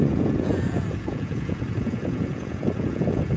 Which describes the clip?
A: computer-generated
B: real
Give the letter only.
A